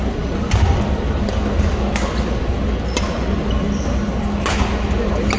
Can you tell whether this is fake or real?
real